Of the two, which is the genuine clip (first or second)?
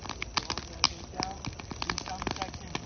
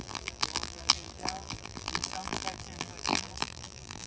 first